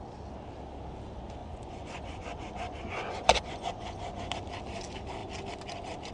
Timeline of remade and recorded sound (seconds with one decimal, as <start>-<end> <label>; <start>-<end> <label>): 0.0-1.4 recorded; 1.4-4.3 remade; 4.3-6.1 recorded